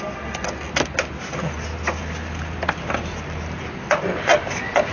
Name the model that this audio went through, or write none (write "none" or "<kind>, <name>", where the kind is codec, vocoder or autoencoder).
none